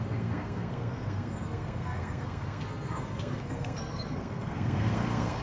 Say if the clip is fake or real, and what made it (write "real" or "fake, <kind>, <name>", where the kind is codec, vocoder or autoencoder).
fake, codec, SNAC